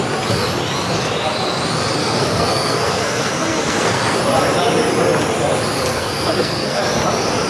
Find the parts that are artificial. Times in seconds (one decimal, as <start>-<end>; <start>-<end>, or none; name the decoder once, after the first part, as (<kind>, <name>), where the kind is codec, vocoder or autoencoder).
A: 2.0-4.2 (codec, SNAC); 5.9-6.8